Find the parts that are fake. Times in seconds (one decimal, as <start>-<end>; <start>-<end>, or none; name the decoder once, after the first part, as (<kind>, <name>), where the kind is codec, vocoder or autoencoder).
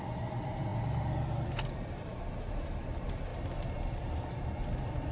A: none